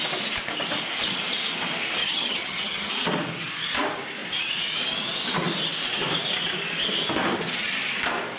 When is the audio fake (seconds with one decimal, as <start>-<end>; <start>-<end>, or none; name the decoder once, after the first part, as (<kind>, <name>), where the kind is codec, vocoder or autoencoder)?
2.0-2.9 (vocoder, HiFi-GAN)